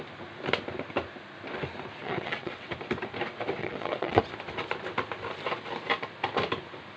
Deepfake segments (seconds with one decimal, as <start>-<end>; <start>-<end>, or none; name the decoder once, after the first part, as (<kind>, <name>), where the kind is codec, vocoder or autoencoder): 2.0-2.7 (vocoder, WaveNeXt); 3.6-4.2